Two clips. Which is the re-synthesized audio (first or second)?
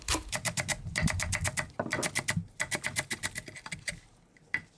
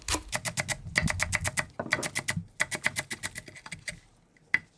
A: first